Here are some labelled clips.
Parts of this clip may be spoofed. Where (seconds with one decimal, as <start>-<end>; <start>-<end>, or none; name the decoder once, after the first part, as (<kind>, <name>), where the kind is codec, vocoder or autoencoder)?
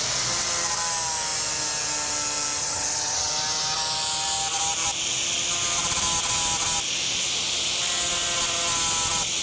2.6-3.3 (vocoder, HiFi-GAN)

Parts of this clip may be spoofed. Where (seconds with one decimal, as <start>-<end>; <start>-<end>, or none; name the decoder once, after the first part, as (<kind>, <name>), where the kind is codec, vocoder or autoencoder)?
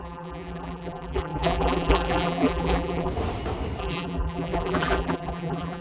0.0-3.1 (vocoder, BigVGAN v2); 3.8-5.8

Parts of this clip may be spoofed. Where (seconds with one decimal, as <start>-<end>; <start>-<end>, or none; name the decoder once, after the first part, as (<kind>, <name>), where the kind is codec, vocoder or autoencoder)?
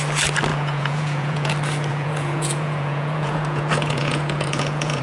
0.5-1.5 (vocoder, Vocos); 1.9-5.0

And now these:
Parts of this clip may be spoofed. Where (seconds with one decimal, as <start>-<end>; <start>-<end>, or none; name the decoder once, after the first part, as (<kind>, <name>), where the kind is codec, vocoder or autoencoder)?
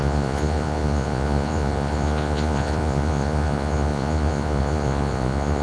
0.0-5.6 (vocoder, Vocos)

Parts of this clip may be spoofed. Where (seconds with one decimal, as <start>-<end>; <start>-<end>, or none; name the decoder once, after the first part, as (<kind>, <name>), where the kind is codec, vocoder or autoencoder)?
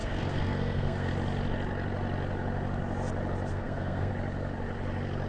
0.0-1.1 (codec, SNAC); 3.5-4.1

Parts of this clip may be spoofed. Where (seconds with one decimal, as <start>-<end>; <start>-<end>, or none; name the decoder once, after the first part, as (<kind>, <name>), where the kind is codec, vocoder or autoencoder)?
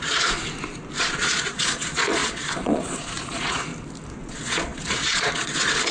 0.0-0.4 (vocoder, Vocos); 1.0-3.7; 4.2-5.9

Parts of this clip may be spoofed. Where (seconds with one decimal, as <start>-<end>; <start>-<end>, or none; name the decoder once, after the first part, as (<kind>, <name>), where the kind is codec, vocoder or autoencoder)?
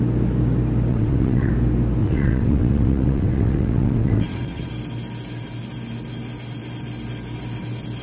0.9-1.5 (vocoder, WaveNeXt); 2.0-4.7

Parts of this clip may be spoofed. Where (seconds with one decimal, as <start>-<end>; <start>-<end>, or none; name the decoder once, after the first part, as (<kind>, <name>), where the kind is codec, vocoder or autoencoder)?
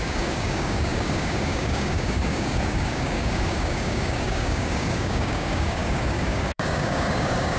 0.0-7.6 (codec, DAC)